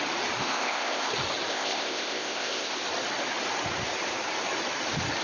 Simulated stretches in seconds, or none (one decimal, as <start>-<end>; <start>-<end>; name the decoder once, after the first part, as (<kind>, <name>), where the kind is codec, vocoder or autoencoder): 0.4-1.1 (codec, ZipCodec); 1.5-2.8